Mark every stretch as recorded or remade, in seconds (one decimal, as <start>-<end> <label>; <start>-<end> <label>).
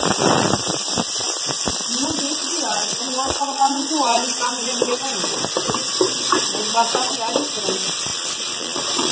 0.0-2.4 recorded; 2.4-4.5 remade; 4.5-8.1 recorded; 8.1-9.1 remade